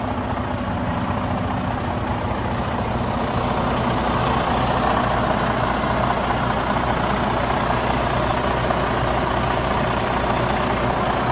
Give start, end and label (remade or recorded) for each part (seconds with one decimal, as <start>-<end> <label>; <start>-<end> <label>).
0.0-2.1 recorded; 2.1-2.9 remade; 2.9-8.3 recorded; 8.3-10.1 remade; 10.1-11.3 recorded